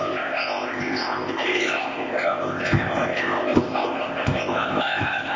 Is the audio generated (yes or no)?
yes